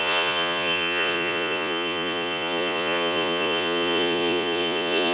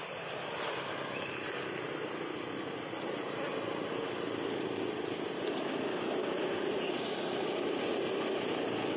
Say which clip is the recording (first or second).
second